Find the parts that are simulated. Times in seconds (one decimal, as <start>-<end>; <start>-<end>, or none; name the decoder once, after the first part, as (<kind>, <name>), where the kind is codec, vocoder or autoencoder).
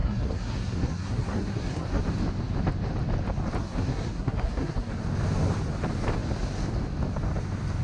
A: 0.0-2.0 (codec, SNAC); 3.6-4.9